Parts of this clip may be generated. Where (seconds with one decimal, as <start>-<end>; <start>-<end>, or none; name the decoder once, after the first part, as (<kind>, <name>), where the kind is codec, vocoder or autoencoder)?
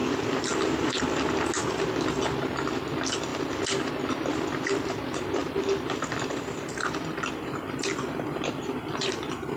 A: 0.0-1.0 (vocoder, BigVGAN v2); 1.6-2.2; 3.3-3.9; 5.4-9.6